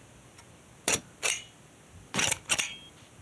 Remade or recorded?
remade